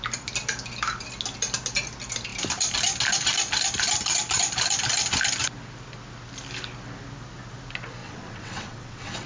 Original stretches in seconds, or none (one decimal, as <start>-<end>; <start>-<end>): 0.0-8.0